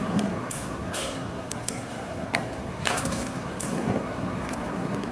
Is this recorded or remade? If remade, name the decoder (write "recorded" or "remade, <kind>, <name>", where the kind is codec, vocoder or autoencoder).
remade, codec, SNAC